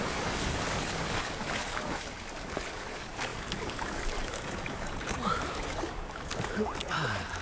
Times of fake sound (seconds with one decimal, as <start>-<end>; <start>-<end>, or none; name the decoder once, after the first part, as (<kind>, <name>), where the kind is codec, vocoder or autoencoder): 0.0-7.4 (codec, DAC)